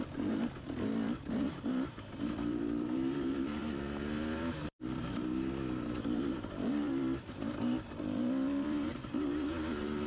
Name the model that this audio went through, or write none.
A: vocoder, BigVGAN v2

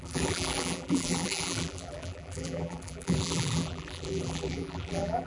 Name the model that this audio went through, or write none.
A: vocoder, BigVGAN v2